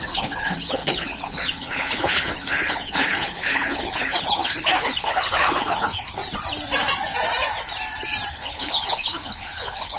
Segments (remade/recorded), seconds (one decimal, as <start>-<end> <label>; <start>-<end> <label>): 0.0-6.2 remade; 6.2-8.3 recorded; 8.3-10.0 remade